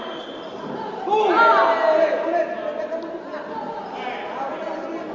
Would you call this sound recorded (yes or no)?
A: yes